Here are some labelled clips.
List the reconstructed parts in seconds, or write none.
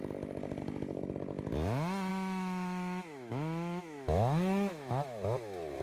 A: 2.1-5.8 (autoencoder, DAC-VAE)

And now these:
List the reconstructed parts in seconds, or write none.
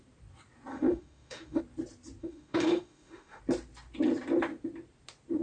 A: 0.7-1.6 (autoencoder, DAC-VAE); 2.2-3.4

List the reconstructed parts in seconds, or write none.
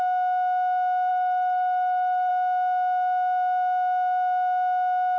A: 1.1-2.3 (autoencoder, DAC-VAE)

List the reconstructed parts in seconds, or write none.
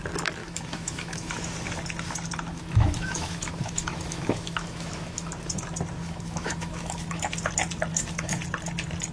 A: 0.4-1.3 (autoencoder, DAC-VAE); 2.5-5.3; 6.0-7.2; 7.9-8.4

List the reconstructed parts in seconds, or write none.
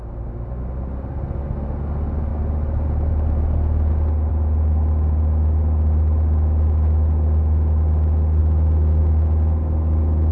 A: none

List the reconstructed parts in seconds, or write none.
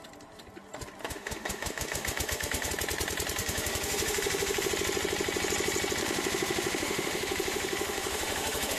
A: 1.0-2.7 (autoencoder, DAC-VAE); 3.4-4.7; 6.0-8.8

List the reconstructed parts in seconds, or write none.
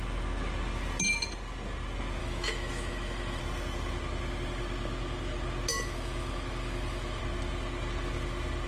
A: 2.2-3.4 (autoencoder, DAC-VAE); 5.7-7.2